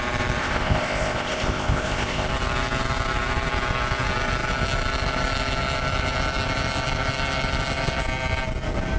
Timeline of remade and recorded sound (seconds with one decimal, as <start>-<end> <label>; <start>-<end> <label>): 0.0-0.4 recorded; 0.4-2.3 remade; 2.3-9.0 recorded